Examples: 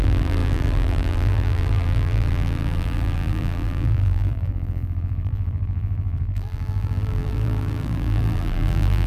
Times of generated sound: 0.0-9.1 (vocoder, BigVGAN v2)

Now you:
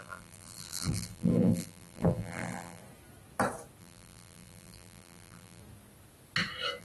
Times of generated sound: 0.0-2.8 (vocoder, BigVGAN v2); 3.8-5.6